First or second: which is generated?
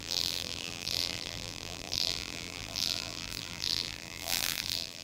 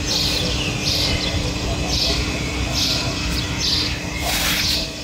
first